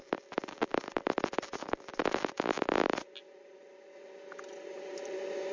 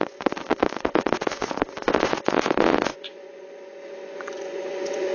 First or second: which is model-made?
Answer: second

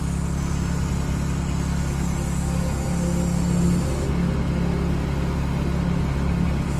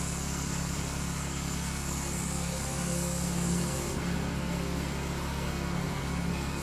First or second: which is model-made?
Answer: second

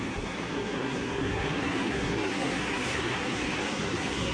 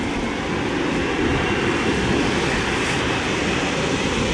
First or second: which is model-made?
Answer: first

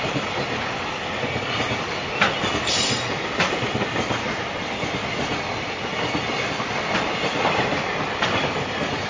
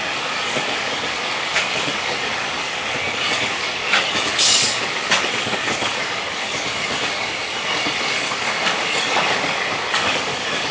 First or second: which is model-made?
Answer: second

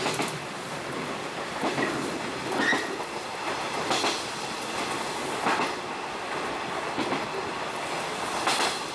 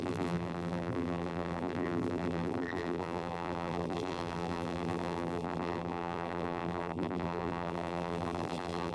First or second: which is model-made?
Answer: second